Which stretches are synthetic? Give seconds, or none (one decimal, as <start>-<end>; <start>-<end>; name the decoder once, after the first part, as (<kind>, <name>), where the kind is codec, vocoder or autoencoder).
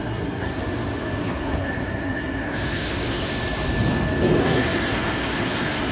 0.0-0.6 (codec, SNAC); 1.2-3.3; 4.4-5.9